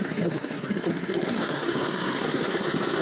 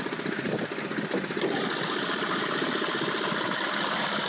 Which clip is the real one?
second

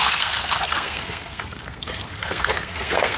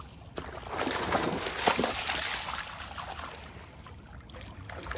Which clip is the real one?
second